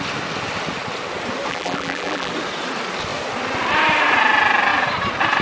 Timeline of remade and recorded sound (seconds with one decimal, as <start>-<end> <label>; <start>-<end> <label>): 0.0-1.5 recorded; 1.5-2.3 remade; 2.3-5.4 recorded